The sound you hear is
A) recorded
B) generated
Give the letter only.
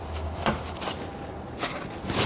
A